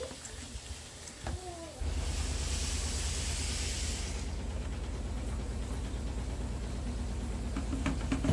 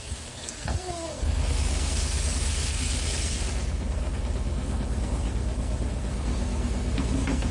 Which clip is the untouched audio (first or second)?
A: first